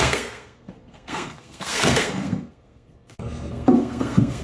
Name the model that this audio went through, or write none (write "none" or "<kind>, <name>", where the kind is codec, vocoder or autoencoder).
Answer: codec, SNAC